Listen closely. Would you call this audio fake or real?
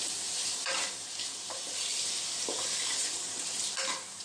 fake